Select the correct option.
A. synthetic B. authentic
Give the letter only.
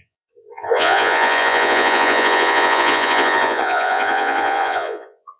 A